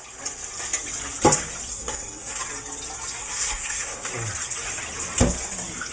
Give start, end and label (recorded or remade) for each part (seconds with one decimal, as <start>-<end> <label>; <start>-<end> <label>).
0.0-1.7 recorded; 1.7-2.4 remade; 2.4-3.2 recorded; 3.2-4.1 remade; 4.1-5.9 recorded